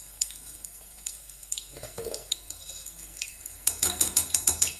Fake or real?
fake